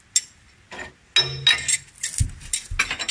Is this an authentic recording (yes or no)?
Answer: yes